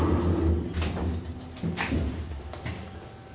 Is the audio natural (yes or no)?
yes